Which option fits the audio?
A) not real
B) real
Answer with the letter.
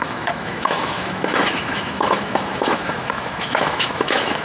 A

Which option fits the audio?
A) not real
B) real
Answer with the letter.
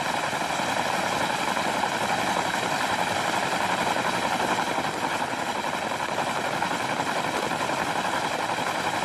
B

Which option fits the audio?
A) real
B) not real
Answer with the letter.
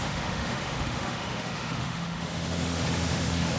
B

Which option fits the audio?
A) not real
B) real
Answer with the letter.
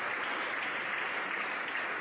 B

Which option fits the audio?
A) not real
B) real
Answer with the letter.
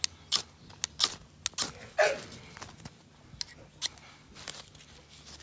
B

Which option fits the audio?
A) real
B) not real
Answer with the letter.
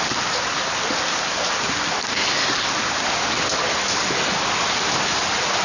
A